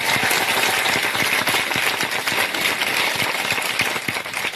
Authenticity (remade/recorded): recorded